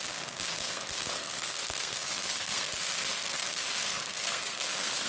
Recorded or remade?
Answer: remade